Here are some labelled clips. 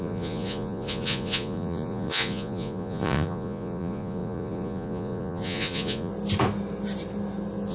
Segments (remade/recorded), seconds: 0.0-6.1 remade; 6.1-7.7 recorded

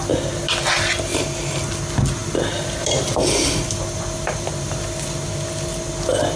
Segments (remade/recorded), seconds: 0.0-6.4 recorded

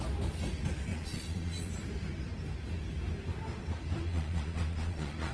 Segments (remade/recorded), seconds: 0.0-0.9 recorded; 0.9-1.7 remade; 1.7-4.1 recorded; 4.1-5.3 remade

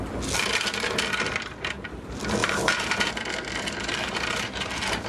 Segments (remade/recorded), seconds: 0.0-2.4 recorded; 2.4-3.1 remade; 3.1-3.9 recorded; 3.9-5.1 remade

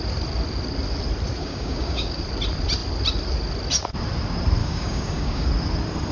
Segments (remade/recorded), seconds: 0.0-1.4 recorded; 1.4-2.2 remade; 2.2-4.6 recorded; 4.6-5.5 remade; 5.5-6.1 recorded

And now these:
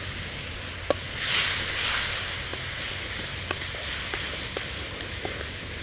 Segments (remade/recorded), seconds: 0.0-5.8 recorded